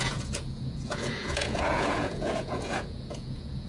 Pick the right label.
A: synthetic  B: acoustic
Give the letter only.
A